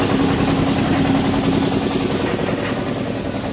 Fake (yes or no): no